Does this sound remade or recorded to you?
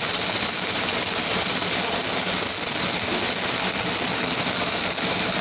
recorded